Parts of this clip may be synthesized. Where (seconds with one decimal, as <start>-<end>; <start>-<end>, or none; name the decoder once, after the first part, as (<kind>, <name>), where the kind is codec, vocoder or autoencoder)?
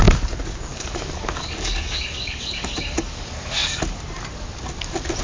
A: 0.7-3.8 (codec, DAC)